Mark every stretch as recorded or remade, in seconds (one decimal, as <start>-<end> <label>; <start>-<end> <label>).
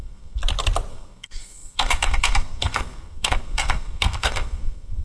0.0-0.4 remade; 0.4-0.9 recorded; 0.9-5.0 remade